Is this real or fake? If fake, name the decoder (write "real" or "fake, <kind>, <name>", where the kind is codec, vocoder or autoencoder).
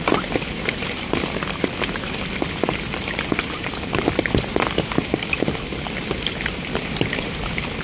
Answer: real